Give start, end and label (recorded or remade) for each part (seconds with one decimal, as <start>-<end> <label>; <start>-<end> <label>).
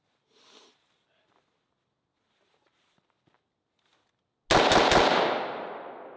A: 0.0-6.2 recorded